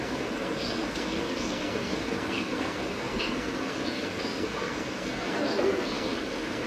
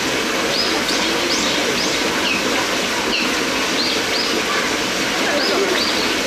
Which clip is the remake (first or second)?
first